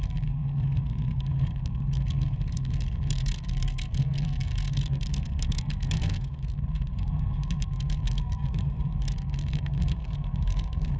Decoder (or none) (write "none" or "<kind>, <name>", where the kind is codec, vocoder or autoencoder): codec, SNAC